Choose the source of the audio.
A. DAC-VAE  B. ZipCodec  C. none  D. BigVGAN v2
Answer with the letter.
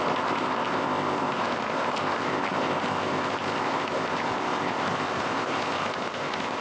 B